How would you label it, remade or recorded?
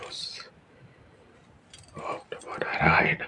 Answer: recorded